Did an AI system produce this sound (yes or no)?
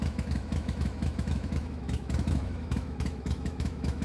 yes